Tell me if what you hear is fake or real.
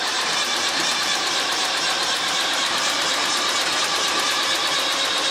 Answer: fake